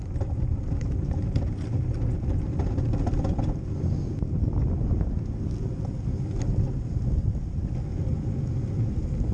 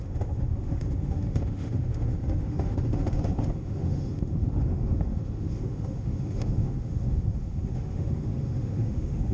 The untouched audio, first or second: first